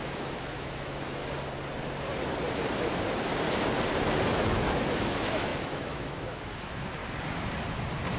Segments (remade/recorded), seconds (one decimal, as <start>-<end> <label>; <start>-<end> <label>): 0.0-1.2 remade; 1.2-4.0 recorded; 4.0-7.0 remade; 7.0-8.2 recorded